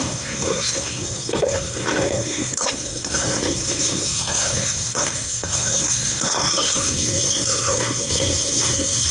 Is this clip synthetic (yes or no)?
yes